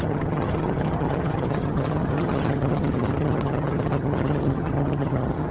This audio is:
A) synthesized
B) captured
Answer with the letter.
A